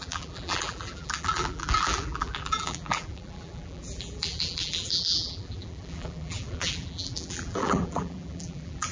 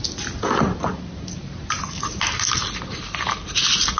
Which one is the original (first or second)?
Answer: second